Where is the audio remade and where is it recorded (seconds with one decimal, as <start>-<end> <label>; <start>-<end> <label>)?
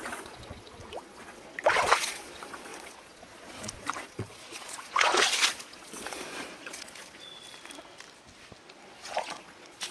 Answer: 0.0-7.3 remade; 7.3-8.8 recorded; 8.8-9.9 remade